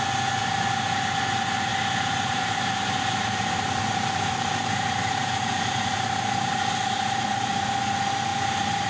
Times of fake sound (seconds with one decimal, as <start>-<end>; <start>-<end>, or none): 0.4-1.2; 1.7-6.5; 8.3-8.9